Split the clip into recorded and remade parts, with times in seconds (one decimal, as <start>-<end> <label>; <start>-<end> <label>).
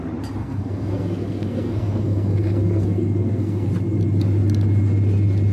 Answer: 0.0-0.4 recorded; 0.4-3.7 remade; 3.7-5.5 recorded